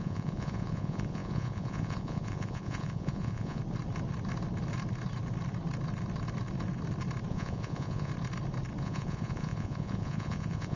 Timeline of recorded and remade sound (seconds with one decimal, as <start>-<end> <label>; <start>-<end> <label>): 0.0-3.6 remade; 3.6-7.3 recorded; 7.3-8.1 remade; 8.1-8.8 recorded; 8.8-10.8 remade